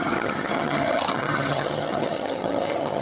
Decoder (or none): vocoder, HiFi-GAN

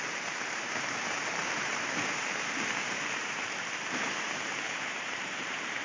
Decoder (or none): vocoder, BigVGAN v2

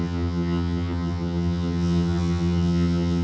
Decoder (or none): vocoder, HiFi-GAN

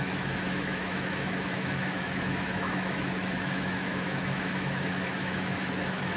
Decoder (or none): autoencoder, DAC-VAE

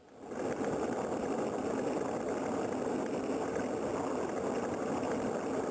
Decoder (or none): none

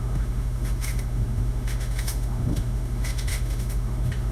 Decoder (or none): autoencoder, DAC-VAE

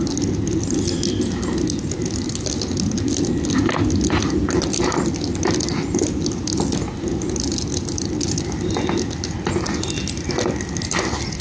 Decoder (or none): none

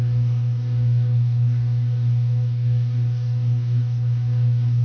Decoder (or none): codec, DAC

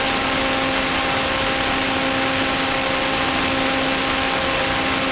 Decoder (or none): none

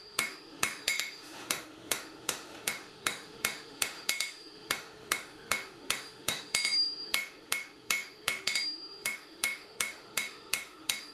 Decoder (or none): autoencoder, DAC-VAE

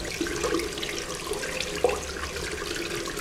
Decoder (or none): none